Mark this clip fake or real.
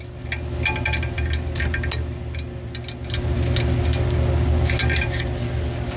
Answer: real